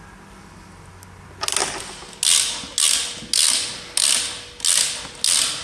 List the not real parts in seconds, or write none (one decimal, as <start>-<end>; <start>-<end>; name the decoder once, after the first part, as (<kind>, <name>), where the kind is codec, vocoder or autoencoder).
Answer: none